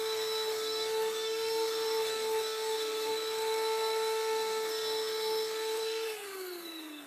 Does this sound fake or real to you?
fake